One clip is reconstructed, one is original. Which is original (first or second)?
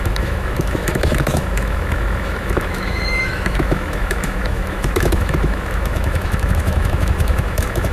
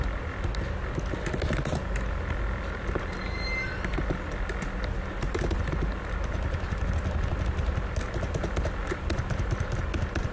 second